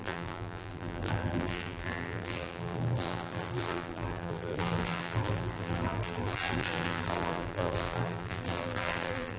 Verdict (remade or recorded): remade